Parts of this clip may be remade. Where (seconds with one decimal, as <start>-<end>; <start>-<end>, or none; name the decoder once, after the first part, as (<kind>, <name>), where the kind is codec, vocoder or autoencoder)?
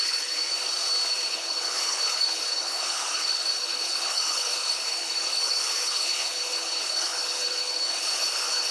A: 0.0-0.4 (codec, HILCodec); 1.3-8.7